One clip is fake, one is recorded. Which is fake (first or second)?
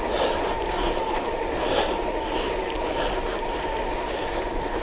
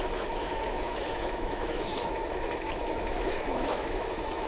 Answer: second